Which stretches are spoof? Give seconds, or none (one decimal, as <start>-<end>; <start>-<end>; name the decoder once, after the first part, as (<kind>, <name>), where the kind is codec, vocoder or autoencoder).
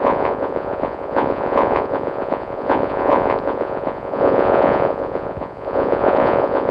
0.0-6.7 (vocoder, Vocos)